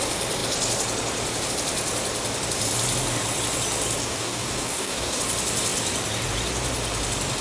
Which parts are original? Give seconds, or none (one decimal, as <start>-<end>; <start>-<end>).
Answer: 0.0-4.0; 5.2-7.4